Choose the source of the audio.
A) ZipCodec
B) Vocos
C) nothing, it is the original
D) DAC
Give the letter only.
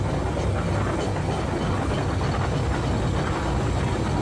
C